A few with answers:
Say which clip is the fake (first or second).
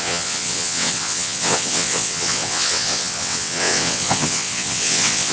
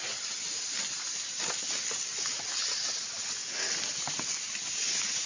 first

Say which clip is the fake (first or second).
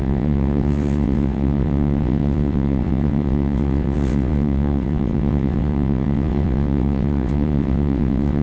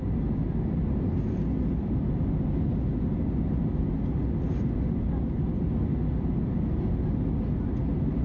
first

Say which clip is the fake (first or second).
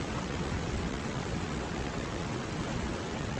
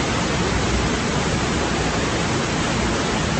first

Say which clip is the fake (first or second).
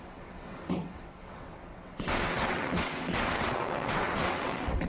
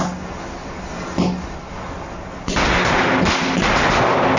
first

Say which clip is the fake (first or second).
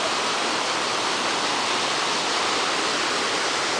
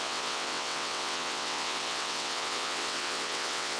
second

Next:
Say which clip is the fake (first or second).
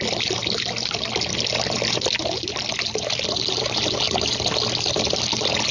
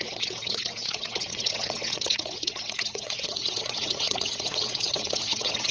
second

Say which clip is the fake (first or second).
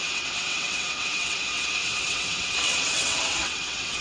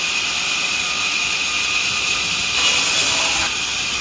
first